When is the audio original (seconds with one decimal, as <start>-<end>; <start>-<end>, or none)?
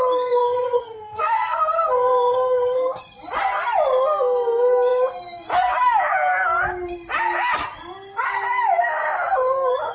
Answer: 0.0-0.4; 3.0-9.9